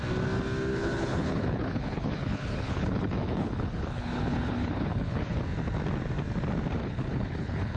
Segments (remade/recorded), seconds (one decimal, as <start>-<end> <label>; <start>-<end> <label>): 0.0-0.7 recorded; 0.7-5.4 remade; 5.4-6.8 recorded; 6.8-7.8 remade